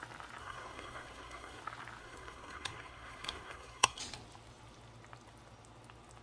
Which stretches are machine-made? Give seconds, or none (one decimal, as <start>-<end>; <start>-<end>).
0.4-1.6; 2.0-4.0